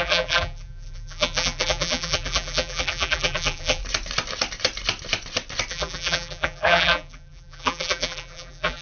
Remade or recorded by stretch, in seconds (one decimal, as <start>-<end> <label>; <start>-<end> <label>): 0.0-3.8 remade; 3.8-5.7 recorded; 5.7-8.8 remade